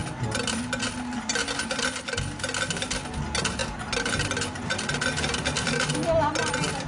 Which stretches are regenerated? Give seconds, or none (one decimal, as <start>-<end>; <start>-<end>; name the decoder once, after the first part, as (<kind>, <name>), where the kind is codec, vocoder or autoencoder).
none